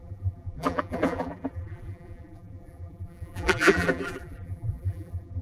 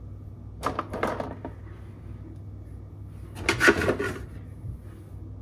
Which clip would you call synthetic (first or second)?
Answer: first